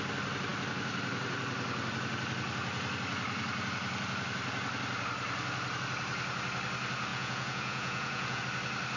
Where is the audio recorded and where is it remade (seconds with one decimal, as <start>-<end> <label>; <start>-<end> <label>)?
0.0-7.1 recorded; 7.1-8.4 remade; 8.4-9.0 recorded

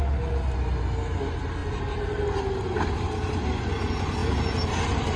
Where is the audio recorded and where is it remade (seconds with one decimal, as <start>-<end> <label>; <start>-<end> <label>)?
0.0-5.2 recorded

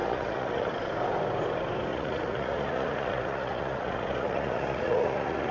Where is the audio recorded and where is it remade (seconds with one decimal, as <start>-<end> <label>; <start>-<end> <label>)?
0.0-0.7 remade; 0.7-1.9 recorded; 1.9-5.5 remade

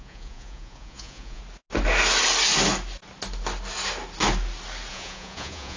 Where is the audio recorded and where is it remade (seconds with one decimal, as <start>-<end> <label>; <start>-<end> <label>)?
0.0-1.4 remade; 1.4-4.9 recorded; 4.9-5.8 remade

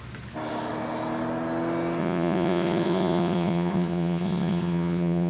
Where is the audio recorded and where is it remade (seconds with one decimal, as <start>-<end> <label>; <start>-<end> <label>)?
0.0-2.0 recorded; 2.0-5.3 remade

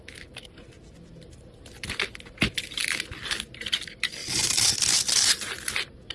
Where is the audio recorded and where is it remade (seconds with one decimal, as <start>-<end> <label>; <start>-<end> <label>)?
0.0-6.1 recorded

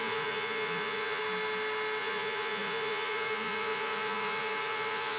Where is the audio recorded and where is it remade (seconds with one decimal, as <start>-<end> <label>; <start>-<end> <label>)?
0.0-1.2 remade; 1.2-2.0 recorded; 2.0-5.2 remade

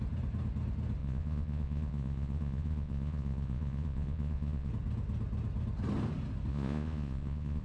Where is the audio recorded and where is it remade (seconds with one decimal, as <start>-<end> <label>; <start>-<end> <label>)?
0.0-1.0 recorded; 1.0-4.7 remade; 4.7-6.5 recorded; 6.5-7.6 remade